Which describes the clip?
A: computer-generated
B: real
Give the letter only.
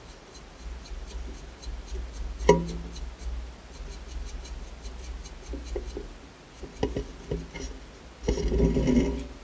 B